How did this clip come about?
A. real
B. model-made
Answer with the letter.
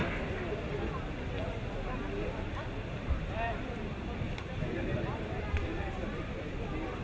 B